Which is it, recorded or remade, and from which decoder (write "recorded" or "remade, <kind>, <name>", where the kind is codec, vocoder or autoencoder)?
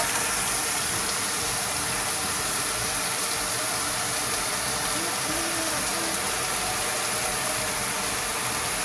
remade, vocoder, BigVGAN v2